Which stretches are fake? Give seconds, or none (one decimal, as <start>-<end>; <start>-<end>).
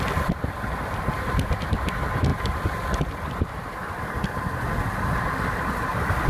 none